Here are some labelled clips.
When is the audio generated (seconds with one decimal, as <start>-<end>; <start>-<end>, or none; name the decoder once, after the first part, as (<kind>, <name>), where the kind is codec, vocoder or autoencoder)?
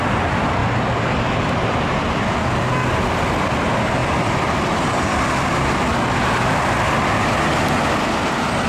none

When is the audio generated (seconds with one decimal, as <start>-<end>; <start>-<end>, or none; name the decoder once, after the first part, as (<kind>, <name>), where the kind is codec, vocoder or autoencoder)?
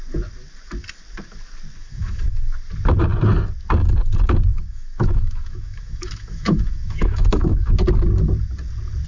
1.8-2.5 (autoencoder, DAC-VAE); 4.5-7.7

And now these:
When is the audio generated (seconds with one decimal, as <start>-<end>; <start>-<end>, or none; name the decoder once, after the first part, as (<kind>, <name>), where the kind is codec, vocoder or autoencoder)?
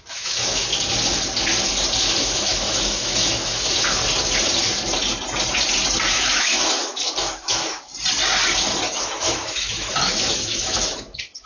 0.0-0.7 (autoencoder, DAC-VAE); 2.0-4.0; 6.1-7.9; 9.0-11.5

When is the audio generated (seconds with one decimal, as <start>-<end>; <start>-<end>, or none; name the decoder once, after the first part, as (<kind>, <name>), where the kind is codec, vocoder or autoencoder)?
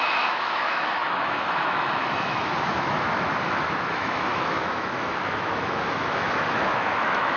0.0-7.4 (autoencoder, DAC-VAE)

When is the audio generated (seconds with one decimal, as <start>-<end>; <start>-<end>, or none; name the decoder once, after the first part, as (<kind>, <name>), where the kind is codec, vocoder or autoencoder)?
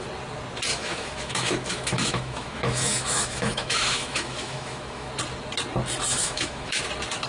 0.7-5.1 (autoencoder, DAC-VAE); 6.1-6.8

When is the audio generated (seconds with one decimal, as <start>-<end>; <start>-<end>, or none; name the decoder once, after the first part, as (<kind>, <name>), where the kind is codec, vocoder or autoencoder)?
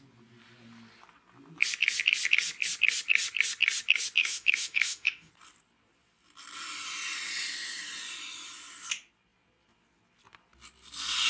4.2-5.3 (autoencoder, DAC-VAE)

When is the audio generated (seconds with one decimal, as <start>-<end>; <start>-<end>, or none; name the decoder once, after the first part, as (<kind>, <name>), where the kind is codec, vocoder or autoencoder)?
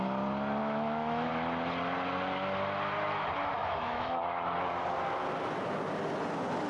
0.6-1.3 (autoencoder, DAC-VAE); 3.6-4.2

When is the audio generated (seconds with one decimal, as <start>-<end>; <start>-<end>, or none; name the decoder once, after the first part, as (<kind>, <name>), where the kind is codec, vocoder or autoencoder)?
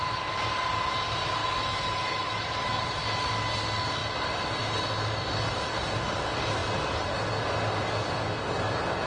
1.4-2.8 (autoencoder, DAC-VAE)